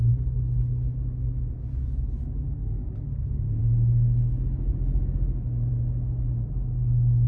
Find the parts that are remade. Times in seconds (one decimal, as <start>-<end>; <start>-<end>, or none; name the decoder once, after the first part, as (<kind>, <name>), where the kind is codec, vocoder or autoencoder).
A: none